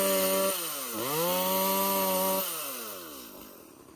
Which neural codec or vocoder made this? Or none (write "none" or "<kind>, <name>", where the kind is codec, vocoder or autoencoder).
none